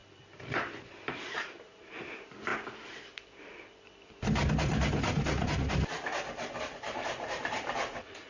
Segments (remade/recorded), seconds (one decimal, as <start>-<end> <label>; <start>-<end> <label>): 0.0-1.1 recorded; 1.1-2.5 remade; 2.5-6.6 recorded; 6.6-8.3 remade